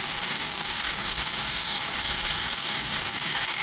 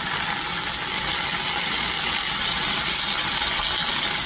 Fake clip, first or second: first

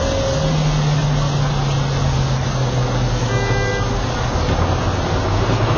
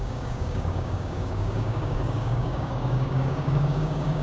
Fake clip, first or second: second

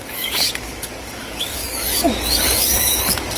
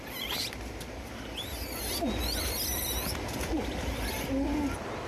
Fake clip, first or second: first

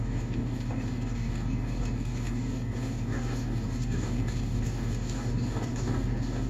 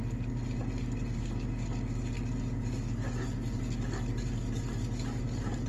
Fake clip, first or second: first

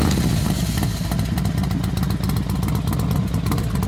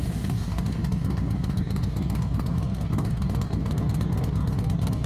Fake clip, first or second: second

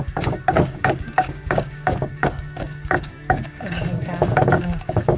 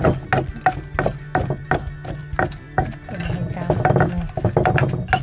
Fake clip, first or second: first